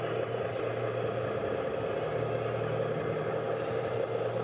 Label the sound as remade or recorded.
recorded